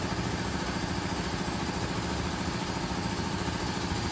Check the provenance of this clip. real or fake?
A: real